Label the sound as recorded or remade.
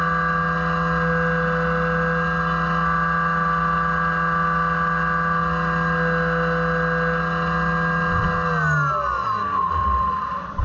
recorded